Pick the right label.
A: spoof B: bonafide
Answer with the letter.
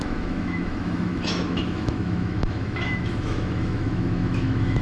A